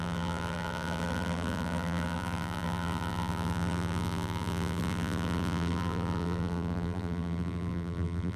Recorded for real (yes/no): no